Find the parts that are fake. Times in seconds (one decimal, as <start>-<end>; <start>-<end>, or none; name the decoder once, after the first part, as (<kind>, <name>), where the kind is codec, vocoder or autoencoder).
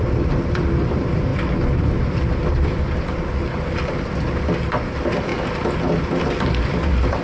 none